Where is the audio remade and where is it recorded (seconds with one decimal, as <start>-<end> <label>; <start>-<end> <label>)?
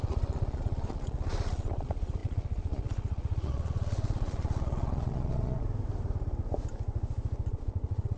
0.0-5.7 remade; 5.7-7.5 recorded; 7.5-8.2 remade